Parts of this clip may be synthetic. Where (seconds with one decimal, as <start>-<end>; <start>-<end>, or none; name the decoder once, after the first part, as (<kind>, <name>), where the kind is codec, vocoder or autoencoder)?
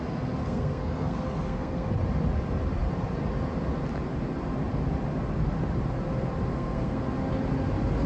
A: 0.4-1.9 (codec, SNAC); 6.5-7.0